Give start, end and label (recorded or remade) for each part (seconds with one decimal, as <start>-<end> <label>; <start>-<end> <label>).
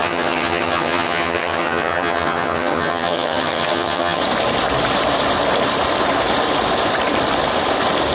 0.0-4.2 remade; 4.2-8.1 recorded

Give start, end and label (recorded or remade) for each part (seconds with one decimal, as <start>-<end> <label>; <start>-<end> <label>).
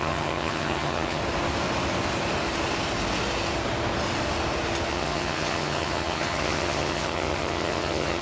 0.0-1.2 remade; 1.2-4.9 recorded; 4.9-8.2 remade